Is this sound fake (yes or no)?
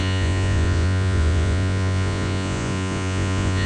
yes